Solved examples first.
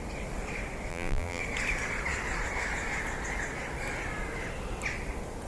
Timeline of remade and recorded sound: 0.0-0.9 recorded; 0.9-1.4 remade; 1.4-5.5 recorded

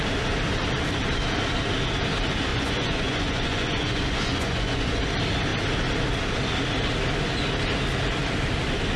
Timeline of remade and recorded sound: 0.0-2.5 recorded; 2.5-4.9 remade; 4.9-9.0 recorded

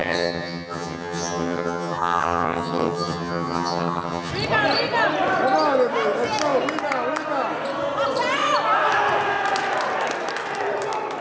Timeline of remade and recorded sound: 0.0-4.3 remade; 4.3-11.2 recorded

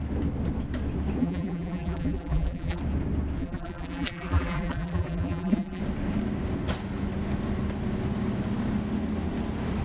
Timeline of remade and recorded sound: 0.0-1.2 recorded; 1.2-2.8 remade; 2.8-3.4 recorded; 3.4-5.8 remade; 5.8-9.8 recorded

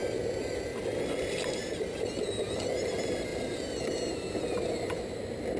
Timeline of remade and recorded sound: 0.0-5.6 recorded

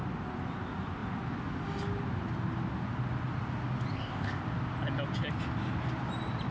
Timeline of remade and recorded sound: 0.0-3.9 recorded; 3.9-4.4 remade; 4.4-6.5 recorded

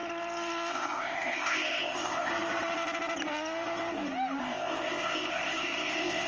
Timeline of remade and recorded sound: 0.0-0.7 recorded; 0.7-2.3 remade; 2.3-4.4 recorded; 4.4-6.3 remade